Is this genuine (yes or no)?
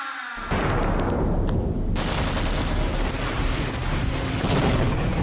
yes